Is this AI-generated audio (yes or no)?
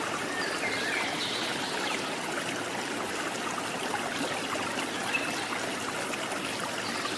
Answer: no